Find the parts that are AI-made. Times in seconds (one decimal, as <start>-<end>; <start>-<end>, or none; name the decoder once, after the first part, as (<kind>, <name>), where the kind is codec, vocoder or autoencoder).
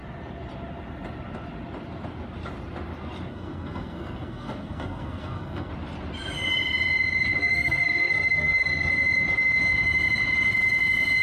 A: 3.3-5.7 (codec, SNAC); 7.4-8.9